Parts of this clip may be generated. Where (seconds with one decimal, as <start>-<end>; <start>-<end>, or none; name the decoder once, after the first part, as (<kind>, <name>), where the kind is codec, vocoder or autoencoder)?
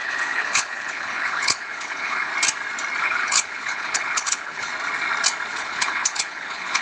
0.0-2.3 (codec, HILCodec); 3.0-4.7; 5.5-6.8